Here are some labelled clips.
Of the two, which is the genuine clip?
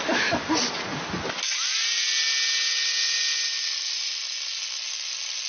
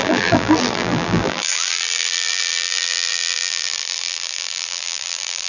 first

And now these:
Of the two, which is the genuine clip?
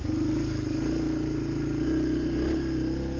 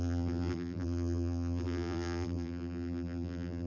first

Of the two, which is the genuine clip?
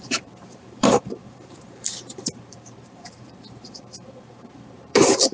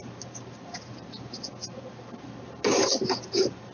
second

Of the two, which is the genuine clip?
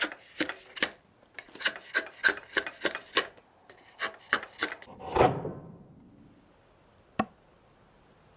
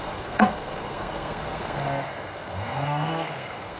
first